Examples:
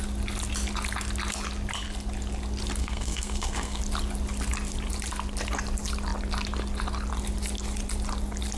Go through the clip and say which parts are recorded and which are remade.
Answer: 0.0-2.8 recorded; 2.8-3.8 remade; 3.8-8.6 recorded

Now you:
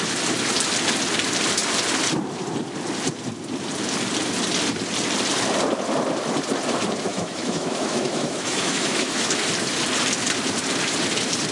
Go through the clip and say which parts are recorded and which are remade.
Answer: 0.0-7.1 recorded; 7.1-9.4 remade; 9.4-11.5 recorded